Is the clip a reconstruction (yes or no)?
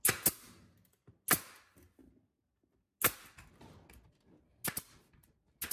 no